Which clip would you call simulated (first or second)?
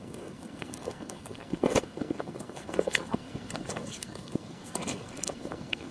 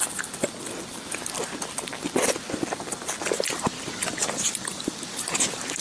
first